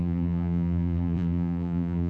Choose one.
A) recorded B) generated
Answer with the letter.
B